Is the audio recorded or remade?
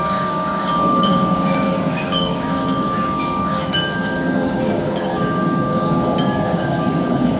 remade